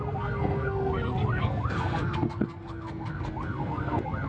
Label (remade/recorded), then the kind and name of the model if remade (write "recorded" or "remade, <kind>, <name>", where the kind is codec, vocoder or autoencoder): remade, codec, SNAC